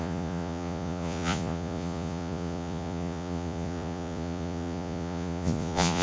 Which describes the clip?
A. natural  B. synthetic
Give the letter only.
B